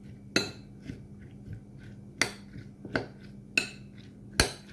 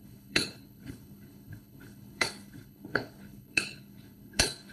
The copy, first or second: second